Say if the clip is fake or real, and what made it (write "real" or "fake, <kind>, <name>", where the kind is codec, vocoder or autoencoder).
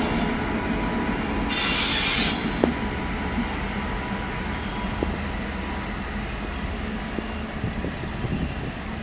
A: real